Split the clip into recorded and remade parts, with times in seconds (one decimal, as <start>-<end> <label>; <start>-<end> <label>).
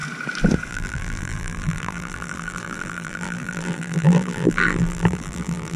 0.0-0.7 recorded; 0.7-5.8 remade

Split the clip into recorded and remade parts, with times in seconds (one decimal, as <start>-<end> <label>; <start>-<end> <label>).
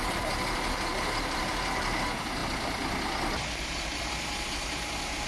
0.0-2.4 remade; 2.4-5.3 recorded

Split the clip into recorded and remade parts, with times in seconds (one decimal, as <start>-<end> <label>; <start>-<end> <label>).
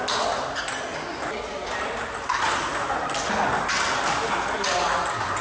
0.0-5.4 recorded